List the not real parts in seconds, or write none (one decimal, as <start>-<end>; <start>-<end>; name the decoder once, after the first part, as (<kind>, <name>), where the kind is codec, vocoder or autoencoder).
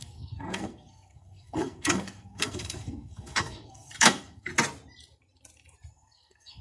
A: 0.0-4.5 (codec, SNAC); 5.9-6.6